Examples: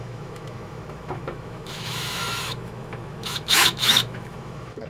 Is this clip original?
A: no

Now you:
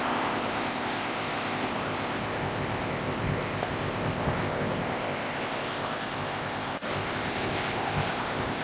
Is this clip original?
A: no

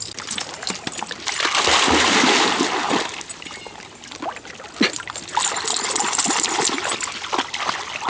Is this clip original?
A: yes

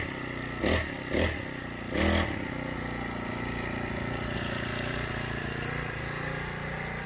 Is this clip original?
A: yes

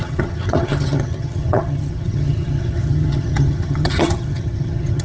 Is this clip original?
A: no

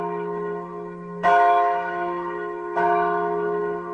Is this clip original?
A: no